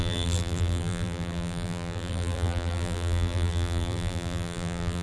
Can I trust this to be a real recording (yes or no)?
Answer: no